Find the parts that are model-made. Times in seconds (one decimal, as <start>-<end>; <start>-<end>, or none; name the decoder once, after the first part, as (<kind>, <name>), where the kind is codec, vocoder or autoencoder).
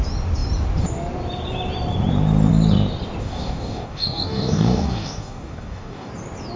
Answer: 3.2-6.1 (codec, DAC)